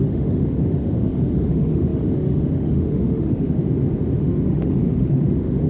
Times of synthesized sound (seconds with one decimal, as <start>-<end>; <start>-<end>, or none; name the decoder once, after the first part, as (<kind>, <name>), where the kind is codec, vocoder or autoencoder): 0.0-3.6 (autoencoder, DAC-VAE); 4.2-5.7